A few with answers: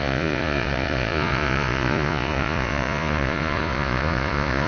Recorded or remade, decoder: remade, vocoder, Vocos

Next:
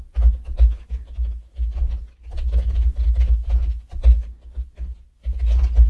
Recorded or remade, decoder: recorded